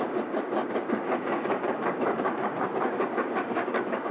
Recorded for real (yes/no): no